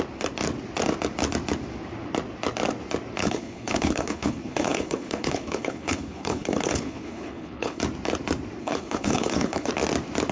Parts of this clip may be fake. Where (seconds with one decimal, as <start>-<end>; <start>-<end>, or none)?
3.2-7.8; 8.6-9.7